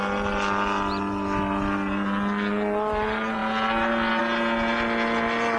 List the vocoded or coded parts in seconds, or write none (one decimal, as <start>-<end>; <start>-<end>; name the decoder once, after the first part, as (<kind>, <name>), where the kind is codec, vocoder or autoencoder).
none